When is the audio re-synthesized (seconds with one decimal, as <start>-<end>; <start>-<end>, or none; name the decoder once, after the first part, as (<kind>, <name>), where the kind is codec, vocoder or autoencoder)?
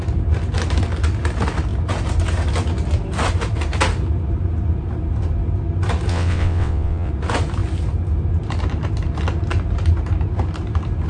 6.1-7.1 (vocoder, WaveNeXt)